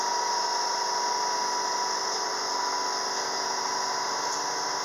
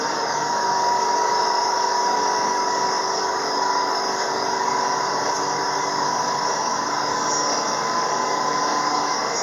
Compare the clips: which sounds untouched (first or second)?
first